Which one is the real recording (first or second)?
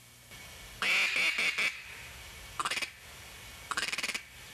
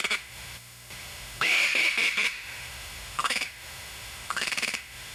first